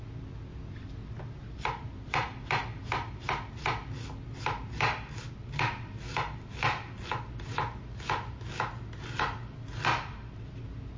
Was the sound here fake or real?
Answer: real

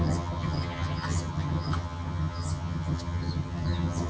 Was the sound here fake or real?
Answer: fake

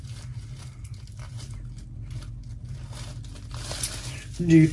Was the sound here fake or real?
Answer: real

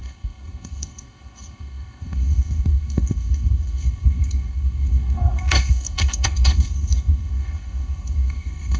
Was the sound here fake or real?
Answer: fake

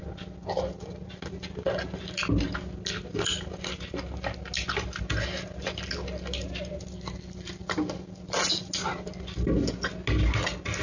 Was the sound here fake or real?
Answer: real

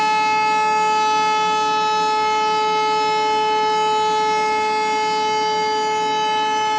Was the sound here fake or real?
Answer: real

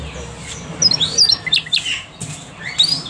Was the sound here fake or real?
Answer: real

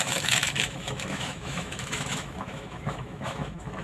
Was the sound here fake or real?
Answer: fake